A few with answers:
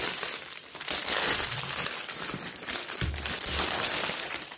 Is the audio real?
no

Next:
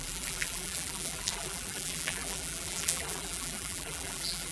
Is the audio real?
no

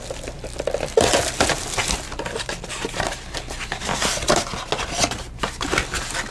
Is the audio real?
yes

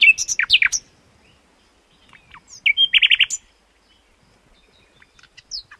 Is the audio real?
yes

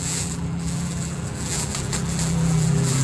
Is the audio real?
no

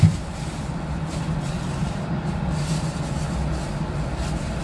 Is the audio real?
yes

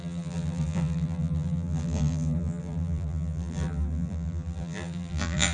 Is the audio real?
no